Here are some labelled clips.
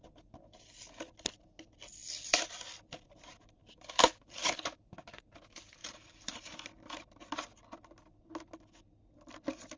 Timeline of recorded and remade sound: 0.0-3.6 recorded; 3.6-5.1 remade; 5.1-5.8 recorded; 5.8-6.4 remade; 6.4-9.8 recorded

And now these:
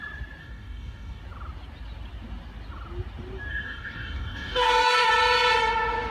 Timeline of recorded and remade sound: 0.0-0.4 recorded; 0.4-1.2 remade; 1.2-3.5 recorded; 3.5-5.1 remade; 5.1-6.1 recorded

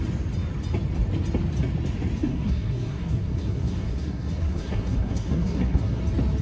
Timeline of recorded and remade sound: 0.0-2.2 recorded; 2.2-6.0 remade; 6.0-6.4 recorded